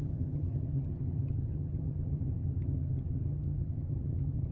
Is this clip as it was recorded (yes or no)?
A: no